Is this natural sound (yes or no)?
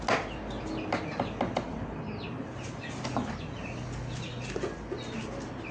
yes